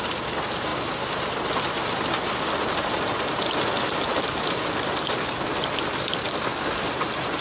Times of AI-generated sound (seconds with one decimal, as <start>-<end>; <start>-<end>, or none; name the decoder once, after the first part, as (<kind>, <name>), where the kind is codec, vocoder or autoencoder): none